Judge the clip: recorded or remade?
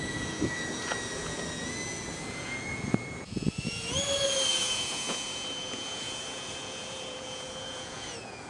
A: remade